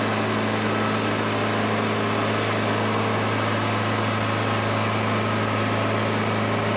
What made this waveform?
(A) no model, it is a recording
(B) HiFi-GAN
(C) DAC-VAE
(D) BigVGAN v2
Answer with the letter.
A